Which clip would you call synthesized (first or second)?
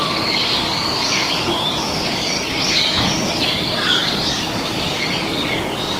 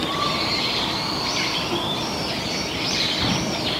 first